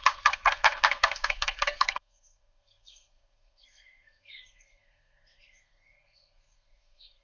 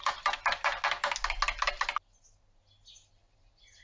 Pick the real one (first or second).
second